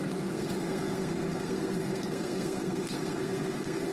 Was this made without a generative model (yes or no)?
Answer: no